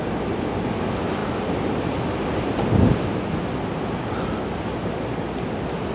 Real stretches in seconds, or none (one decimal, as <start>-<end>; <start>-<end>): 0.0-5.9